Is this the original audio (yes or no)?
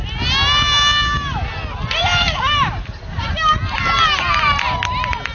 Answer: yes